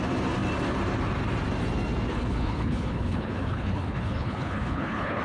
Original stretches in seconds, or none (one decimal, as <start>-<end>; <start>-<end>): 0.0-2.1

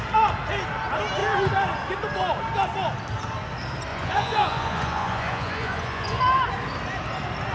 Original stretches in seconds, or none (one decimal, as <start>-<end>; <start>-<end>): 0.0-3.9; 6.2-7.5

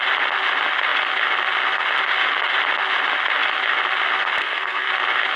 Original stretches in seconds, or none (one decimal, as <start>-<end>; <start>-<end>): 0.0-4.4; 4.9-5.4